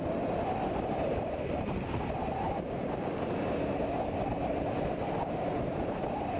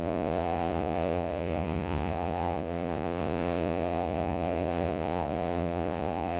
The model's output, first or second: second